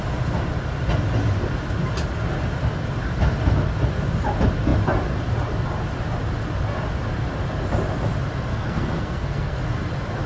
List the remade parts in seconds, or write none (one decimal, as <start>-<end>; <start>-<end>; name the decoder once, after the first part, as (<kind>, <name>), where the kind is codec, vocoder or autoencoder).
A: 8.5-9.6 (codec, SNAC)